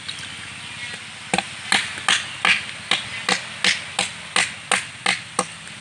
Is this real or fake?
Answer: real